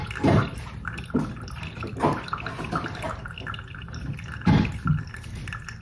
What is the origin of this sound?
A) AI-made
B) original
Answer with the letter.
B